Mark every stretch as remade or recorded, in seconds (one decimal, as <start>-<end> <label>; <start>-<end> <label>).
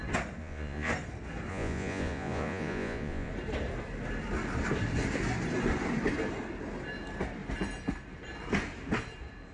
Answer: 0.0-0.4 recorded; 0.4-0.9 remade; 0.9-1.5 recorded; 1.5-3.3 remade; 3.3-9.5 recorded